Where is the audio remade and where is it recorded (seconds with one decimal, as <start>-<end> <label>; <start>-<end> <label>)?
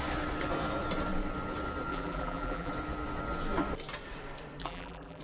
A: 0.0-1.9 recorded; 1.9-2.7 remade; 2.7-4.6 recorded; 4.6-5.2 remade